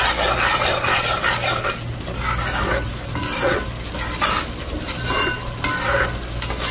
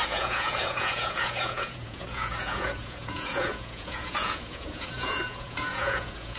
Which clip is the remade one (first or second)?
second